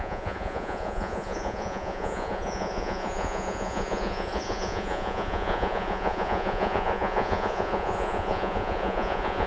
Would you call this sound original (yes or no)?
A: no